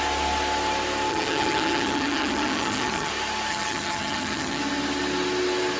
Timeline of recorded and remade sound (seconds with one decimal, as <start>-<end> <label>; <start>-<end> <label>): 0.0-1.1 recorded; 1.1-3.1 remade; 3.1-3.5 recorded; 3.5-4.6 remade; 4.6-5.8 recorded